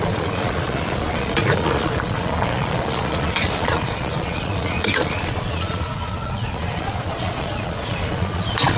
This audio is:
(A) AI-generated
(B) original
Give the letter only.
A